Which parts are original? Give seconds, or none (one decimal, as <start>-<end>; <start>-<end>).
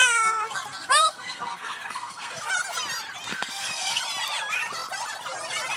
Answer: 2.5-3.3; 4.0-5.8